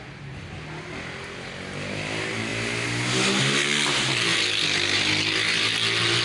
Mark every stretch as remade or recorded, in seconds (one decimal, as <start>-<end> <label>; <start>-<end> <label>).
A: 0.0-4.3 recorded; 4.3-5.0 remade; 5.0-6.2 recorded